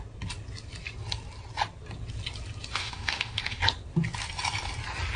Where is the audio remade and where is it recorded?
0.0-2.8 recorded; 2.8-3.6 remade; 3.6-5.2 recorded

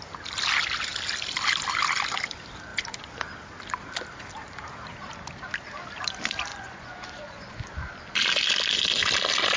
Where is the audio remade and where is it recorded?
0.0-6.5 recorded; 6.5-7.9 remade; 7.9-9.6 recorded

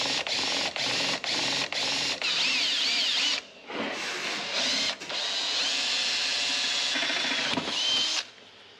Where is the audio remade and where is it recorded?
0.0-8.8 recorded

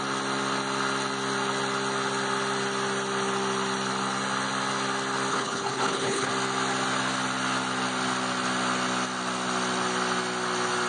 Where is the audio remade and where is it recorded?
0.0-5.3 recorded; 5.3-6.3 remade; 6.3-10.9 recorded

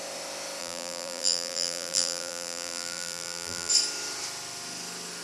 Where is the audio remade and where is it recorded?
0.0-0.6 recorded; 0.6-3.7 remade; 3.7-5.2 recorded

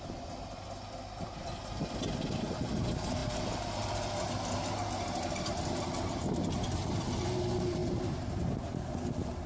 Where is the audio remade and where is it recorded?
0.0-9.5 recorded

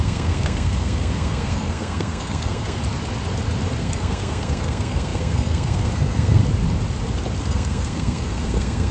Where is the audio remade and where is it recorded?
0.0-2.8 remade; 2.8-3.8 recorded; 3.8-6.4 remade; 6.4-7.4 recorded; 7.4-8.9 remade

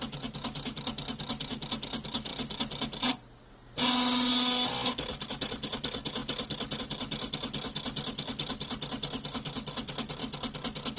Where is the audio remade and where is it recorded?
0.0-11.0 recorded